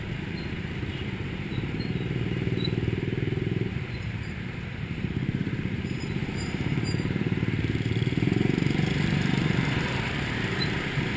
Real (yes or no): no